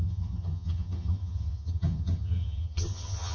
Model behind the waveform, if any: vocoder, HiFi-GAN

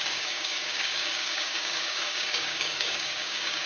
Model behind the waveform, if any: codec, DAC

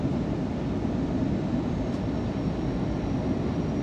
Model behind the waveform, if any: none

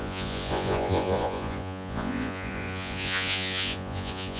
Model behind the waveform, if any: vocoder, Vocos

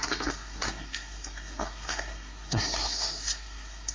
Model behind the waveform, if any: codec, SNAC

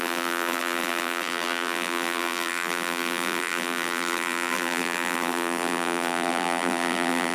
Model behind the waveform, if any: vocoder, BigVGAN v2